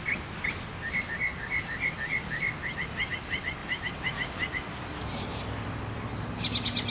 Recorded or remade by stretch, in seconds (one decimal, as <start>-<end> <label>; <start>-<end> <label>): 0.0-3.6 recorded; 3.6-6.2 remade; 6.2-6.9 recorded